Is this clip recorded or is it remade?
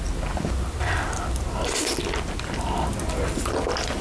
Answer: recorded